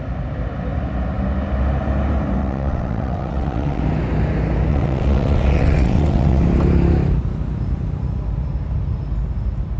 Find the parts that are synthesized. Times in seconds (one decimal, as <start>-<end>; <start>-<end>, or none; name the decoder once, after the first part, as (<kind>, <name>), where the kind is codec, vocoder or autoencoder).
2.4-3.8 (vocoder, WaveNeXt); 4.7-6.4